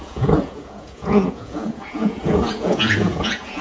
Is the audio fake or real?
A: fake